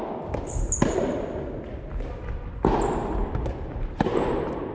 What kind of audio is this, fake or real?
real